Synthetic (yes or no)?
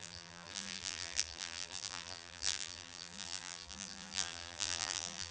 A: yes